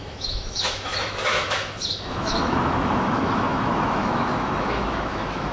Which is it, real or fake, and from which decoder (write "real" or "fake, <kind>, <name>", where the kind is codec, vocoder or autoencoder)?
fake, autoencoder, DAC-VAE